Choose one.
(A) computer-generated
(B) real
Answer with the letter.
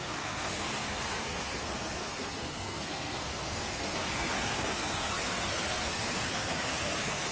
A